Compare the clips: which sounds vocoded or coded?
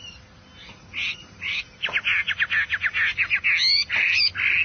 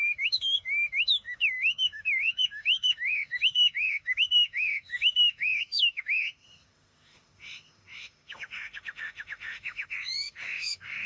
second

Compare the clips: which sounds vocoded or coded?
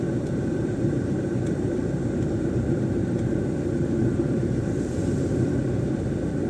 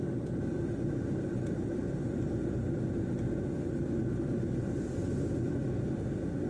first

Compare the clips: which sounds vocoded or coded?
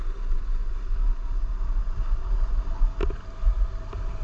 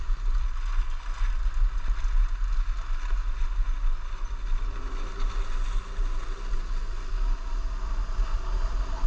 first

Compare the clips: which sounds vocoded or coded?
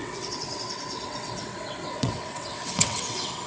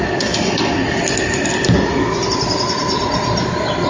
first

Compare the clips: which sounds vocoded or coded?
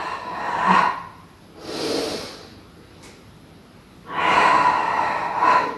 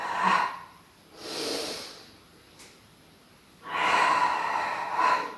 second